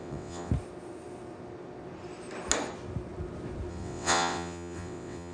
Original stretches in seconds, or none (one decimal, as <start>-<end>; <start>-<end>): 0.5-3.7